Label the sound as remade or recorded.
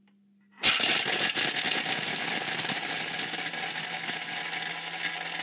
recorded